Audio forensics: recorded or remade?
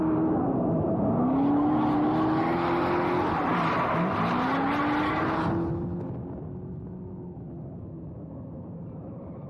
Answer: recorded